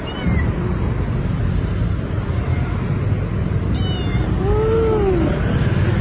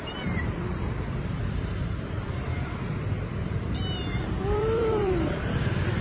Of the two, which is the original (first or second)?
first